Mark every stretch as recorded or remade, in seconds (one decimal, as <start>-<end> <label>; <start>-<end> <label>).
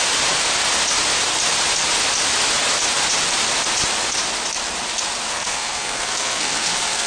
0.0-5.3 recorded; 5.3-7.1 remade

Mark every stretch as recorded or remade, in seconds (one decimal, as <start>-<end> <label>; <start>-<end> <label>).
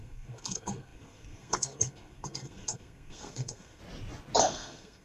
0.0-3.8 remade; 3.8-4.4 recorded; 4.4-5.0 remade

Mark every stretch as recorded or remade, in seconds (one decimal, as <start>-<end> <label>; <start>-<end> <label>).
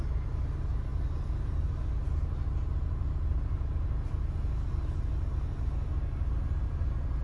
0.0-7.2 recorded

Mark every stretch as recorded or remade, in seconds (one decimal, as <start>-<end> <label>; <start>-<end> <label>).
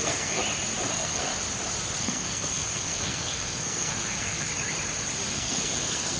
0.0-0.4 remade; 0.4-0.9 recorded; 0.9-1.3 remade; 1.3-2.0 recorded; 2.0-4.5 remade; 4.5-5.3 recorded; 5.3-6.2 remade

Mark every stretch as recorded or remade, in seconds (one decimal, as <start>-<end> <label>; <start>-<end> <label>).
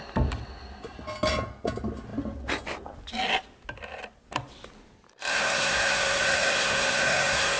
0.0-5.3 recorded; 5.3-7.6 remade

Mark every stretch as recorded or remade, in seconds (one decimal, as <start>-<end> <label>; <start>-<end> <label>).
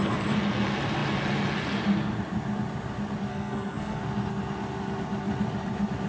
0.0-3.3 recorded; 3.3-4.0 remade; 4.0-6.1 recorded